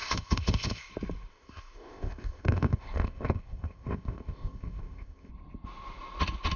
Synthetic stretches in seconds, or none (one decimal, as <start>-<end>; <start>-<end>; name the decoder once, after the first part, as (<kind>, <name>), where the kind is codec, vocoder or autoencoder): 0.0-0.9 (codec, ZipCodec); 1.3-5.3